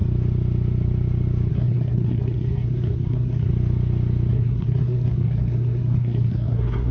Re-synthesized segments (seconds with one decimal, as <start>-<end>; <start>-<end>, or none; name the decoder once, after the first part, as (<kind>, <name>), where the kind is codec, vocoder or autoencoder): 1.5-3.5 (codec, SNAC); 4.3-6.9